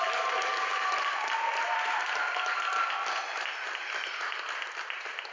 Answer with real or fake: real